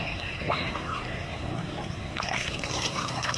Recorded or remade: remade